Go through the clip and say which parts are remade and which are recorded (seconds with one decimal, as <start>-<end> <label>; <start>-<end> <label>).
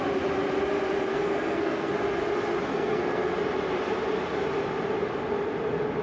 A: 0.0-1.1 recorded; 1.1-1.9 remade; 1.9-2.7 recorded; 2.7-3.3 remade; 3.3-6.0 recorded